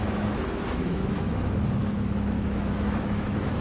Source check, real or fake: fake